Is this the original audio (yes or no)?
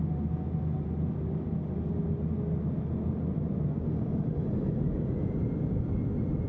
yes